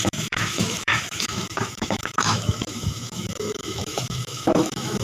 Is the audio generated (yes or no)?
yes